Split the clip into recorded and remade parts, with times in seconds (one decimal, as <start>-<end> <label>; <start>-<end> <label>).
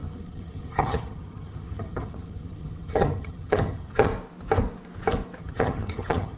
0.0-4.1 remade; 4.1-5.4 recorded; 5.4-6.4 remade